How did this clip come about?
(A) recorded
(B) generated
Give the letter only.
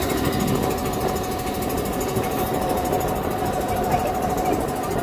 A